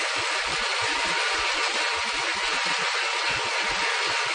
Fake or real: real